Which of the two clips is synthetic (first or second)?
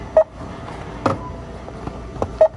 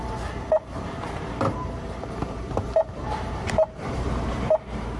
second